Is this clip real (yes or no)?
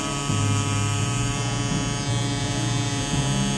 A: yes